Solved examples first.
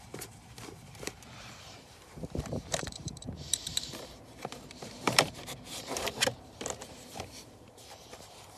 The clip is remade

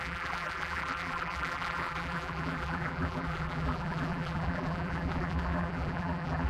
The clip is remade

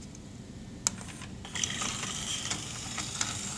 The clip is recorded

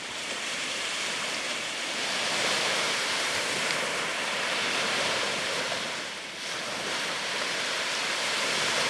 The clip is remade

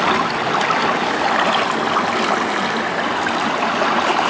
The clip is recorded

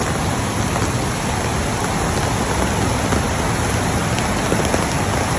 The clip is recorded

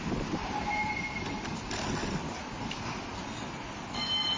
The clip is remade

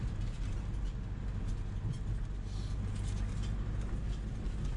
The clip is recorded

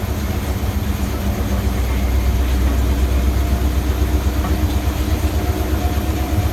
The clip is recorded